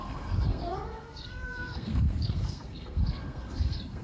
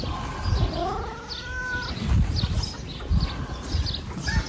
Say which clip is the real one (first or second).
second